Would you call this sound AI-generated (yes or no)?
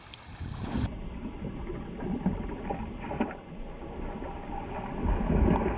no